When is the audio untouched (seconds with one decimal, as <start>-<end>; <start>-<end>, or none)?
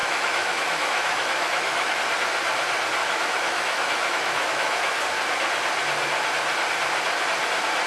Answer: 2.0-3.0; 5.0-7.9